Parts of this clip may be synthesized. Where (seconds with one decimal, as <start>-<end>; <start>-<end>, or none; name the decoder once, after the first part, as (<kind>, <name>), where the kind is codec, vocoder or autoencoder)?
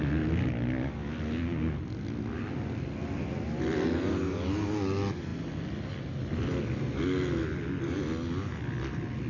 none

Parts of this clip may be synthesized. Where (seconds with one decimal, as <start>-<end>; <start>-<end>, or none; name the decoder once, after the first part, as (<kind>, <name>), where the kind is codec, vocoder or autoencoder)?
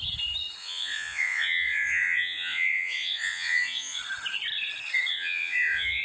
0.6-4.0 (vocoder, Vocos); 5.1-6.0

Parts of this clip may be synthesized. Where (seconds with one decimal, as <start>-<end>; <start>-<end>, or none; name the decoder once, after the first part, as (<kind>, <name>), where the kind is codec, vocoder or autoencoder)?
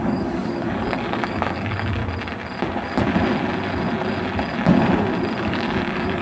0.0-2.0 (codec, DAC); 5.4-6.2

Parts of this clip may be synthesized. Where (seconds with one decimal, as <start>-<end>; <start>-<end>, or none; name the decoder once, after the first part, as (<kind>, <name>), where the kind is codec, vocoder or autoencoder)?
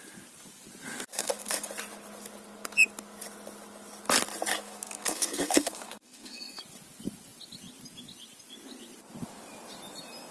1.1-1.7 (codec, SNAC); 4.5-6.6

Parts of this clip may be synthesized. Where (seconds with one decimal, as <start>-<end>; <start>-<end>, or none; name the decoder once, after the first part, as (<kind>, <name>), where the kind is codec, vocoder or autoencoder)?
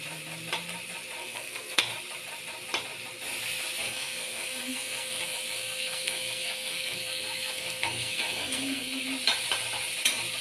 1.2-1.8 (codec, SNAC); 3.8-9.0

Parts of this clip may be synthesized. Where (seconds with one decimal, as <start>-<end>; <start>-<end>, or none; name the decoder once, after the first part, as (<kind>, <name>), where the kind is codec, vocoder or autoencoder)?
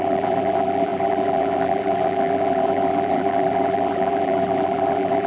0.0-5.3 (vocoder, BigVGAN v2)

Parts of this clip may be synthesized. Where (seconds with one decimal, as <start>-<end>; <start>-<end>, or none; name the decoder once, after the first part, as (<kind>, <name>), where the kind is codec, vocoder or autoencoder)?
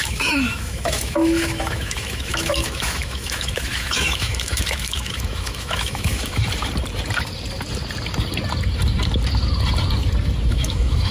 0.0-6.4 (autoencoder, DAC-VAE); 10.5-11.1